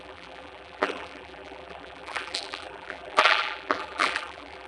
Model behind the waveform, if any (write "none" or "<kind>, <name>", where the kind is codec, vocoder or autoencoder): vocoder, BigVGAN v2